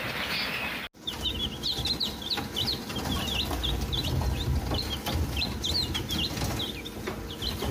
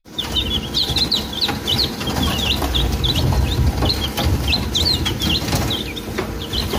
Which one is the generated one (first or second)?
second